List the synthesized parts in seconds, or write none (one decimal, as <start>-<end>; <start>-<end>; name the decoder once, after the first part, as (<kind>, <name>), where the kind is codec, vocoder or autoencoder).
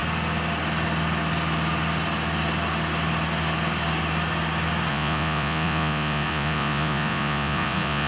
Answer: 4.9-8.1 (vocoder, Vocos)